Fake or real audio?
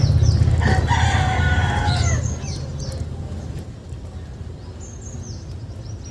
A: real